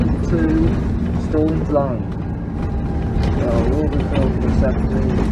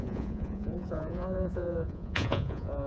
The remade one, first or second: second